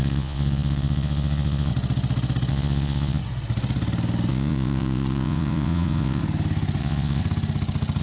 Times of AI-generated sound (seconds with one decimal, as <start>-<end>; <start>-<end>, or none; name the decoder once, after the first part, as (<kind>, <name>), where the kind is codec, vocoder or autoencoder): 0.0-1.7 (vocoder, Vocos); 2.5-3.2; 4.3-6.2; 6.8-7.2